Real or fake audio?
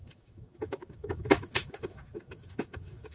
fake